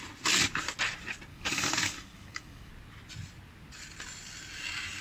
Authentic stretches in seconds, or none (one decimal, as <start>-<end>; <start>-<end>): 0.0-1.3; 2.7-5.0